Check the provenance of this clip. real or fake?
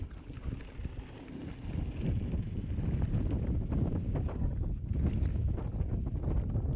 real